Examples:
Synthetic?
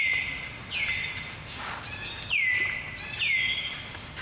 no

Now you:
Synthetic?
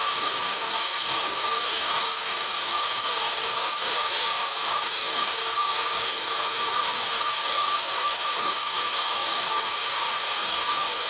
yes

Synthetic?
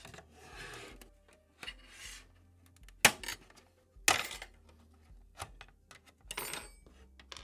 no